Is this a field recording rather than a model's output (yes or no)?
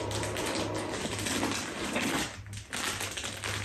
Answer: yes